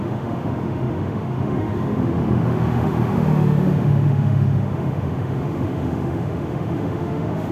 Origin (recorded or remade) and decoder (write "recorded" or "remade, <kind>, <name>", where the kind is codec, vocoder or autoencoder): remade, autoencoder, DAC-VAE